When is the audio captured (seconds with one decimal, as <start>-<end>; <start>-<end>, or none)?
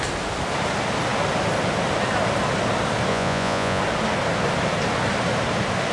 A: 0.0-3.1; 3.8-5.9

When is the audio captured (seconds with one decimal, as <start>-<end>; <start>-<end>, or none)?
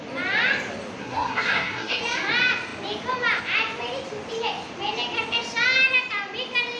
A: 0.0-1.0; 2.0-6.8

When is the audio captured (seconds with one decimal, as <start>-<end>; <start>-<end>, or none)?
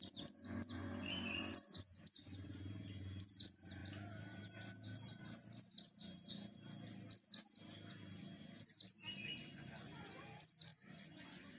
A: 2.5-9.3; 10.2-10.7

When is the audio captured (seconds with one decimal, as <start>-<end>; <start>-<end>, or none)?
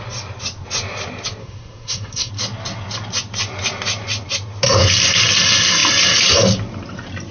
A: 0.0-1.4; 2.3-7.3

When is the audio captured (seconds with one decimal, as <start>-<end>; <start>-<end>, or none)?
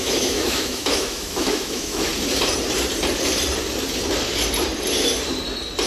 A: 2.1-5.9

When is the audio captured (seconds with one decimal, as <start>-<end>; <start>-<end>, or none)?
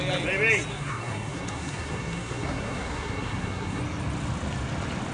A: 0.0-0.7; 3.8-5.1